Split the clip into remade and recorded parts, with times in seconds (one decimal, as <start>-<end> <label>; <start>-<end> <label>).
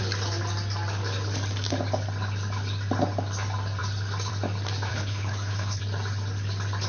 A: 0.0-4.9 recorded; 4.9-5.8 remade; 5.8-6.9 recorded